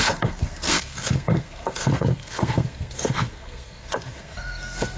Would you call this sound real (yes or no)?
no